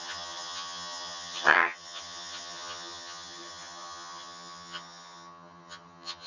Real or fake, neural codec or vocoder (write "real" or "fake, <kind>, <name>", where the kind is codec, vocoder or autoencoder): fake, vocoder, HiFi-GAN